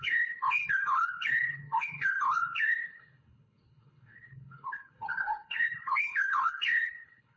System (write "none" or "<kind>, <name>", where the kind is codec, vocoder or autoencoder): codec, HILCodec